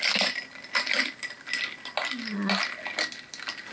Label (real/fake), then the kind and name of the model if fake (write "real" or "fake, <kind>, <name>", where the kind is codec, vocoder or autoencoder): real